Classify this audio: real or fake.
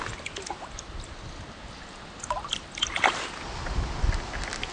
real